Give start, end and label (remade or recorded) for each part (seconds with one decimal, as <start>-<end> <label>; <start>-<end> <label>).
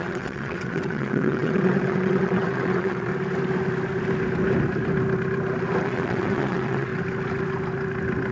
0.0-3.1 remade; 3.1-5.8 recorded; 5.8-6.9 remade; 6.9-8.3 recorded